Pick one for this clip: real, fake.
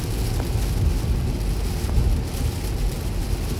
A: real